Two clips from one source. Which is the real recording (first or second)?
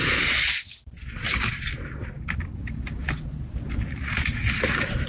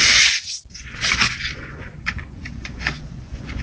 first